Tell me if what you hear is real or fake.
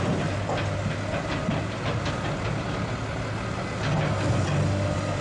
real